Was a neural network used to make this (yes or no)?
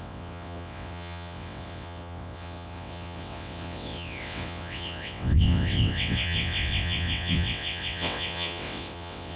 yes